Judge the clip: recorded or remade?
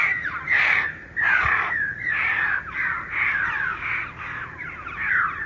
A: remade